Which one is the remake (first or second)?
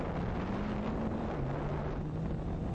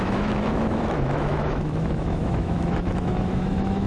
second